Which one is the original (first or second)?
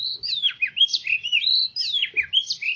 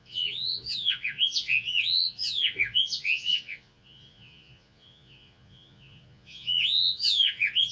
first